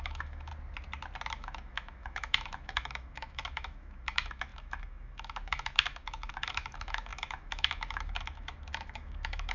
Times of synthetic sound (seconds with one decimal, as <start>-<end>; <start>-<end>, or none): 0.0-0.5; 1.3-9.5